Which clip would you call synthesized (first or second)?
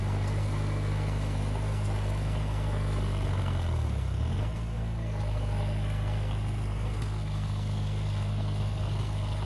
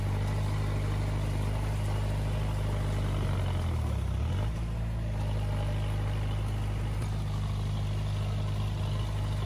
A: first